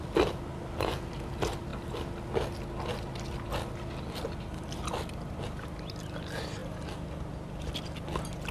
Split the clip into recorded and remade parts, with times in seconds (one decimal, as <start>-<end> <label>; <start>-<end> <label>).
0.0-8.5 recorded